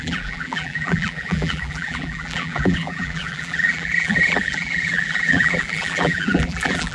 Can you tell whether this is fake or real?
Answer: fake